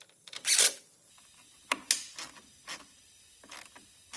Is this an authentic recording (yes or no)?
yes